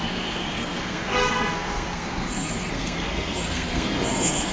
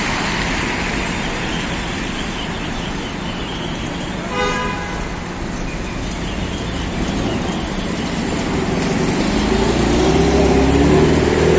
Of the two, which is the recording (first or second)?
second